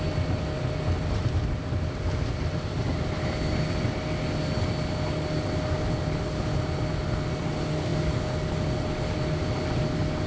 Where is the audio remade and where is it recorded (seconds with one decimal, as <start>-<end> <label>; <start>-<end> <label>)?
0.0-10.3 recorded